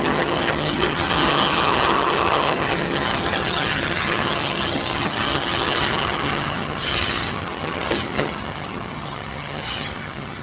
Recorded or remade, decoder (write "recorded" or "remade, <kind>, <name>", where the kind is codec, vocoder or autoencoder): remade, vocoder, HiFi-GAN